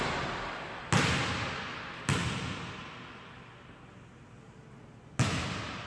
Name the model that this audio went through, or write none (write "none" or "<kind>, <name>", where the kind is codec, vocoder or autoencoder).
none